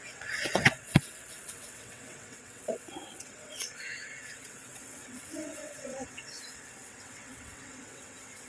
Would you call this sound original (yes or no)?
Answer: no